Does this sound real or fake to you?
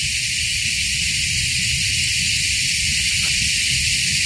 real